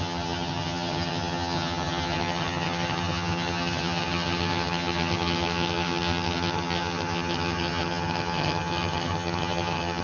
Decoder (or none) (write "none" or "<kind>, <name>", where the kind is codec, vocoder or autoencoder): vocoder, HiFi-GAN